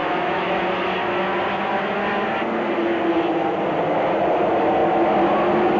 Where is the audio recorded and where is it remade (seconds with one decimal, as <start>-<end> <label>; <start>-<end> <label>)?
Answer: 0.0-0.6 remade; 0.6-5.8 recorded